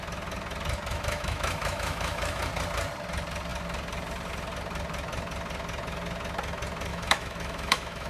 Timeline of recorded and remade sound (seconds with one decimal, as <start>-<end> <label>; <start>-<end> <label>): 0.0-0.9 recorded; 0.9-2.4 remade; 2.4-6.9 recorded; 6.9-8.1 remade